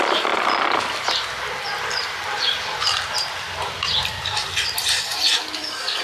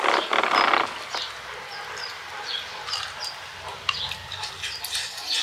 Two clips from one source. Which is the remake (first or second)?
first